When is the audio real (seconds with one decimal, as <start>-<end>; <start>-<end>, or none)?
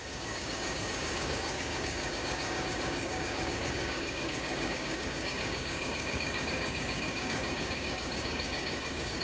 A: none